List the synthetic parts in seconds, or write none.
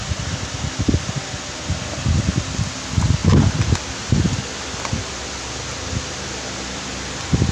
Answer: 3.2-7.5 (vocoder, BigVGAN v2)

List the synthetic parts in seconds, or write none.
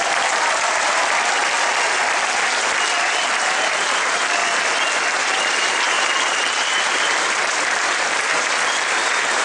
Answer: 0.0-1.4 (vocoder, BigVGAN v2); 3.0-4.4; 5.1-9.4